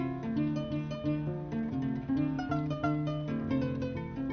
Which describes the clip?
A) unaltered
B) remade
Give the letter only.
A